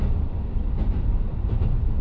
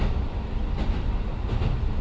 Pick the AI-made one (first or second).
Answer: first